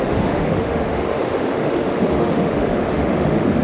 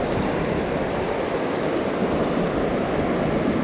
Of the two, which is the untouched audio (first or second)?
second